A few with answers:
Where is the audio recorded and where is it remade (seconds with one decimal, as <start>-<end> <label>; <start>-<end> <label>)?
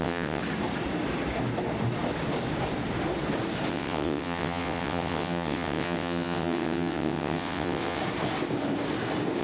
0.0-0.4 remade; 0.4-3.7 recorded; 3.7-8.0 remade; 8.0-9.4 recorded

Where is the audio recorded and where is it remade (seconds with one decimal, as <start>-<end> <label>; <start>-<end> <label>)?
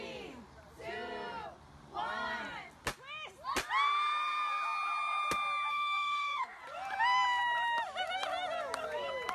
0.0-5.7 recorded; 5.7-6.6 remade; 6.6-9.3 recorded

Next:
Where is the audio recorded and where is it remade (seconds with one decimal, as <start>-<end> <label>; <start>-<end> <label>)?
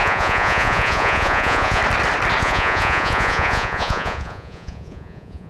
0.0-1.8 remade; 1.8-2.4 recorded; 2.4-5.5 remade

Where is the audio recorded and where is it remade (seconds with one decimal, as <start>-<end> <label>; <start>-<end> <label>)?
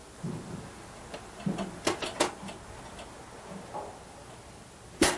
0.0-5.2 recorded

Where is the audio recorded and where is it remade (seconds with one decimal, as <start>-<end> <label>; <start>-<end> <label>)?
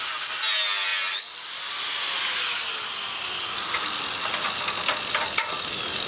0.0-6.1 recorded